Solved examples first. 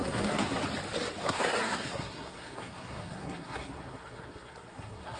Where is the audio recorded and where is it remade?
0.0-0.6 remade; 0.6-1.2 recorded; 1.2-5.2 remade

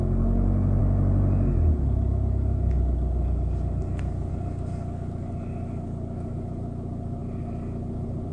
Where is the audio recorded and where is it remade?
0.0-8.3 recorded

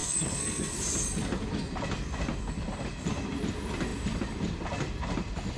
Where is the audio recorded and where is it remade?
0.0-0.7 remade; 0.7-5.6 recorded

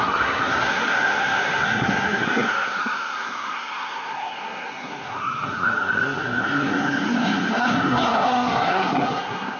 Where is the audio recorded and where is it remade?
0.0-9.6 remade

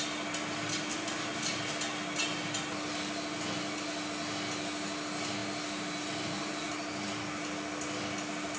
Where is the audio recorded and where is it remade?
0.0-8.6 recorded

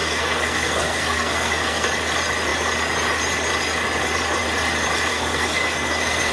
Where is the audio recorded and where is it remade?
0.0-1.9 remade; 1.9-5.1 recorded; 5.1-6.3 remade

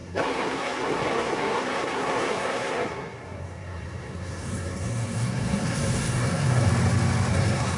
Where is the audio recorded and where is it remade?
0.0-6.7 remade; 6.7-7.3 recorded; 7.3-7.8 remade

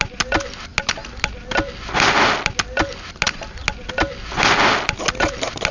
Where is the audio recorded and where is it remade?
0.0-5.7 recorded